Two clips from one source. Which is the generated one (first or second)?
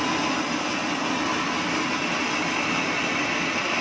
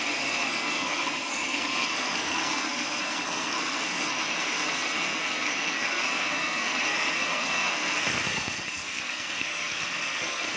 second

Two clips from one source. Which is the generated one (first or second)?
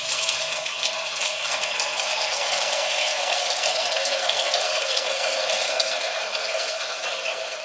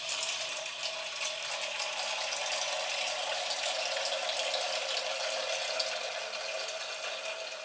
first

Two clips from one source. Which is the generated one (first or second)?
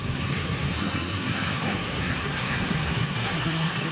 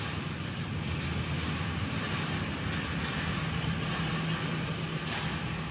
first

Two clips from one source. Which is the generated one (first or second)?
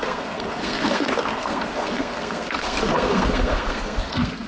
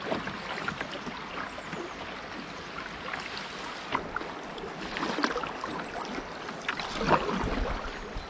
first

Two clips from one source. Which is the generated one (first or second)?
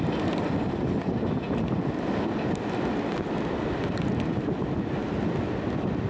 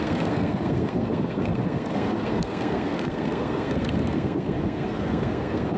second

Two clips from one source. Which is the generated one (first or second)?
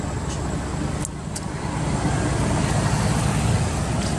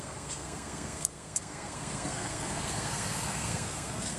second